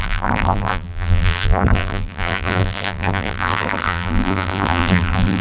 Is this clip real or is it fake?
fake